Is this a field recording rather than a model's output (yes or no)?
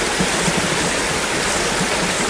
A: yes